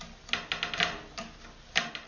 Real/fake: real